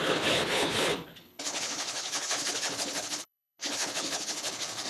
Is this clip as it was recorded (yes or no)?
no